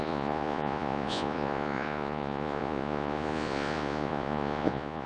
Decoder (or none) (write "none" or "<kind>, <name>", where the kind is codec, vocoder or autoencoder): vocoder, Vocos